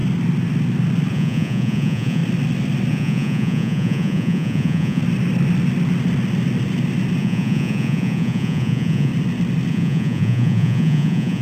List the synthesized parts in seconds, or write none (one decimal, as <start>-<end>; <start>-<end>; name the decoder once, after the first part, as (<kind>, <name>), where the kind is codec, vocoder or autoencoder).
1.1-2.2 (vocoder, Vocos); 2.9-5.0; 7.2-9.1; 9.7-11.4